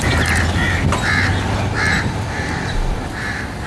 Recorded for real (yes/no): no